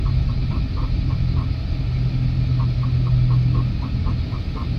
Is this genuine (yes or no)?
yes